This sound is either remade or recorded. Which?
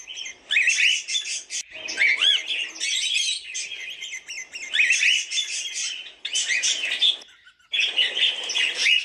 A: recorded